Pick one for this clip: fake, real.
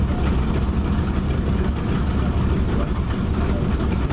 real